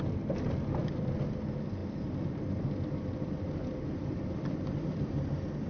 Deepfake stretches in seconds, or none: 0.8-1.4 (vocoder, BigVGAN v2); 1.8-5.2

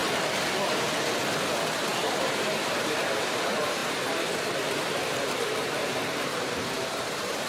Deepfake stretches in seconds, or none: 1.2-7.5 (vocoder, BigVGAN v2)

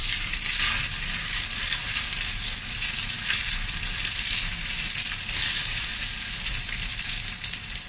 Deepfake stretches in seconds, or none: none

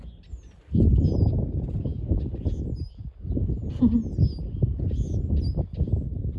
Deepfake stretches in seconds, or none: none